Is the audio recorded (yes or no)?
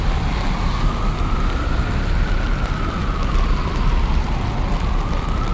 yes